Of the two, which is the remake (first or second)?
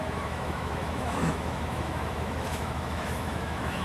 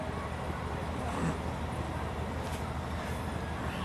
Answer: first